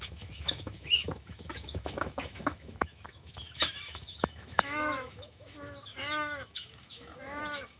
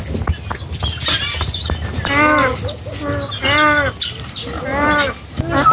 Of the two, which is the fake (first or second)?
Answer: first